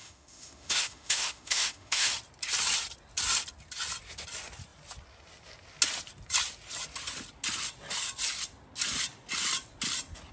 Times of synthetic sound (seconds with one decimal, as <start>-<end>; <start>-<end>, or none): 0.0-2.1